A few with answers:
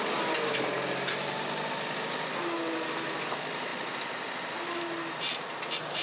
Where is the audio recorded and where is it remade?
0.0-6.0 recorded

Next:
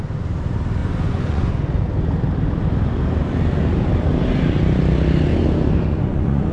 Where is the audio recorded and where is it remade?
0.0-0.8 recorded; 0.8-1.5 remade; 1.5-5.9 recorded; 5.9-6.5 remade

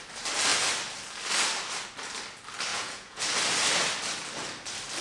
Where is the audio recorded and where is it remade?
0.0-2.7 recorded; 2.7-3.2 remade; 3.2-5.0 recorded

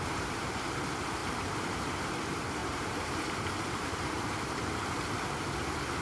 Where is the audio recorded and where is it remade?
0.0-1.2 recorded; 1.2-2.1 remade; 2.1-2.6 recorded; 2.6-5.0 remade; 5.0-6.0 recorded

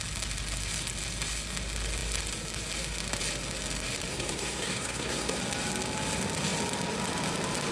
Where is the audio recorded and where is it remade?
0.0-4.1 recorded; 4.1-5.4 remade; 5.4-7.7 recorded